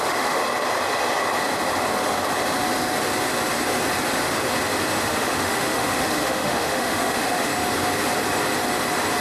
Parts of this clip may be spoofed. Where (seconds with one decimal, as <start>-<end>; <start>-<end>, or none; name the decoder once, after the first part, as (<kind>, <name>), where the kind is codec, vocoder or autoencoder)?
0.0-0.4 (autoencoder, DAC-VAE); 5.0-7.5